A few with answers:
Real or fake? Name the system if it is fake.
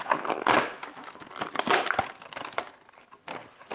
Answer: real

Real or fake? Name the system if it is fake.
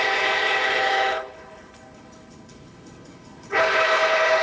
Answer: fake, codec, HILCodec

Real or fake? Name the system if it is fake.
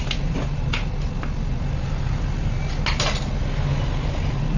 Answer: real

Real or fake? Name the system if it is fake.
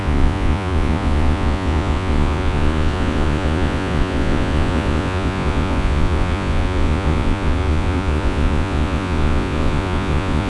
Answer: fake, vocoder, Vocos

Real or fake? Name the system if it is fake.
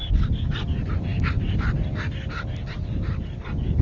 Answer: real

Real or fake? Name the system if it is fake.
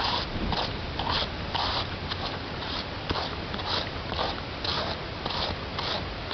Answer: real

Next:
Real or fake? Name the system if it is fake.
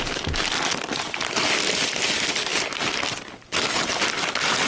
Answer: real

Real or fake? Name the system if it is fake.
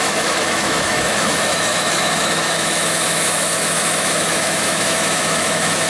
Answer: fake, autoencoder, DAC-VAE